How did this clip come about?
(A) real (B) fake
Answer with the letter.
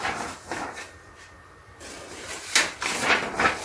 B